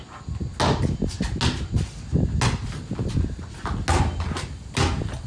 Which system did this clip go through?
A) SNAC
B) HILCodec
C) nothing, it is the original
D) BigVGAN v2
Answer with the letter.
C